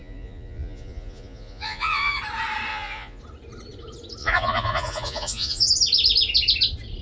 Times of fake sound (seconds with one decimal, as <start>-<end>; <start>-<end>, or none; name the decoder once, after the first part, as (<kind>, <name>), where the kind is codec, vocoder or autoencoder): 0.0-2.2 (vocoder, Vocos); 2.7-3.2; 4.2-5.7